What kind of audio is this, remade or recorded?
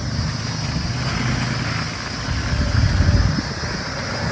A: recorded